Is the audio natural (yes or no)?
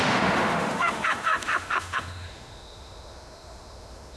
no